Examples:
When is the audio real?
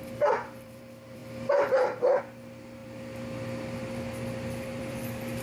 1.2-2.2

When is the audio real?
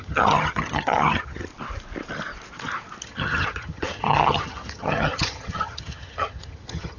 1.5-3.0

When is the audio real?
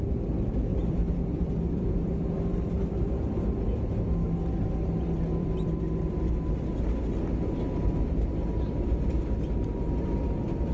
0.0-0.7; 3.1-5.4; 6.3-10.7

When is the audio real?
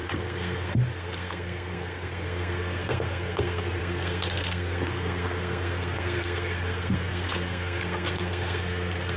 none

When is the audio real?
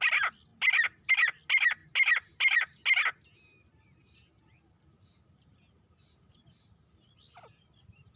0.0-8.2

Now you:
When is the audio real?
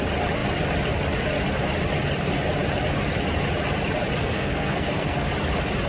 0.0-4.2; 5.3-5.9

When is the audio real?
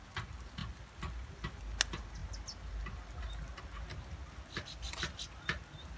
0.0-6.0